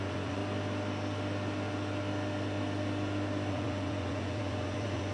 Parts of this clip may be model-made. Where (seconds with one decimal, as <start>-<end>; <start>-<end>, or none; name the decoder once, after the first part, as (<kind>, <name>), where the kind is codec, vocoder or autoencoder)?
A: 0.0-0.4 (vocoder, Vocos); 3.5-5.1